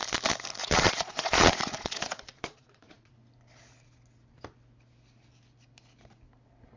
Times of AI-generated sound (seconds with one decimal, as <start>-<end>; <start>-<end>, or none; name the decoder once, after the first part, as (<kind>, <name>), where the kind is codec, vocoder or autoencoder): 0.6-3.1 (vocoder, Vocos)